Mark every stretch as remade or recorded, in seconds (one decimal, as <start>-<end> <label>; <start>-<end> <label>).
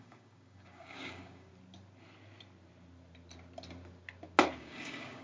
0.0-1.5 remade; 1.5-4.6 recorded; 4.6-5.2 remade